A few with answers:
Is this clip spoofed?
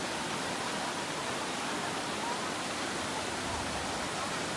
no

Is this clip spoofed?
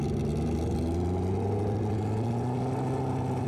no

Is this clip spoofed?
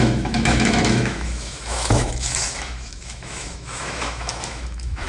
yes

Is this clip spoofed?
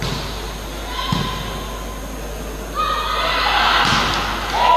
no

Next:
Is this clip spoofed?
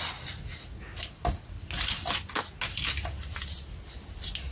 no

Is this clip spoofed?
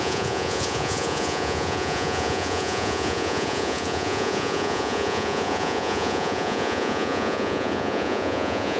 yes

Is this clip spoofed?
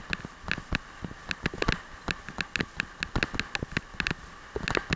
no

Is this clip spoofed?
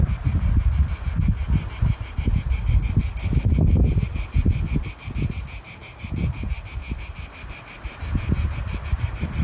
no